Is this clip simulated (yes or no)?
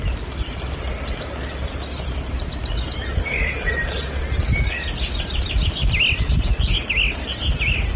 no